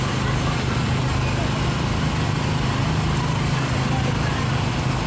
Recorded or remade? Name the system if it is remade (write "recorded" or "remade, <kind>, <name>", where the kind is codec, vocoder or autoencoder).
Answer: recorded